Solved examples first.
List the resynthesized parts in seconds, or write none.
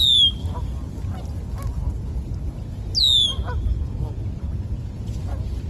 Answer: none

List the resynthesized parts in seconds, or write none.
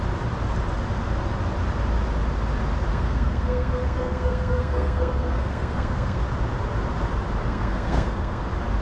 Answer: 2.9-6.2 (codec, SNAC); 7.4-8.4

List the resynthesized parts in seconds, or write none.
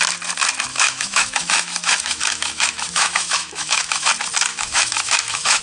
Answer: 0.7-4.1 (autoencoder, DAC-VAE); 4.5-5.6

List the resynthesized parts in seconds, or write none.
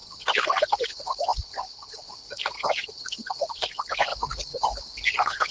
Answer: 0.0-5.5 (codec, HILCodec)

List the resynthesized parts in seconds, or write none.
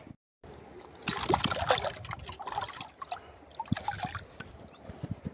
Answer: none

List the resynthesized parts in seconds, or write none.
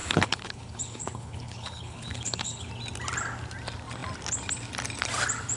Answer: 0.0-2.7 (codec, HILCodec)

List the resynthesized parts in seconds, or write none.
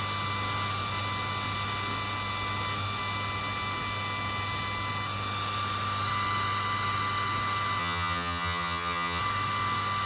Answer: 7.8-9.2 (vocoder, HiFi-GAN)